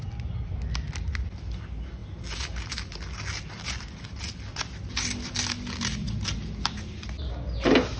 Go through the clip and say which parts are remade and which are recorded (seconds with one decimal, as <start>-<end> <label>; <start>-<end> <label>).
0.0-8.0 recorded